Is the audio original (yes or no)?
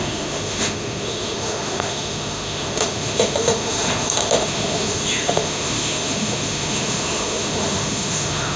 no